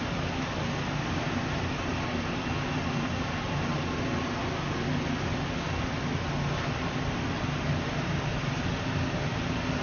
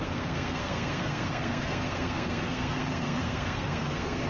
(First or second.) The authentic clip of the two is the first